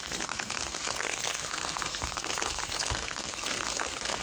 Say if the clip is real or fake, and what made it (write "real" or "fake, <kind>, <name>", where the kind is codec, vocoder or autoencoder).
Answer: fake, codec, SNAC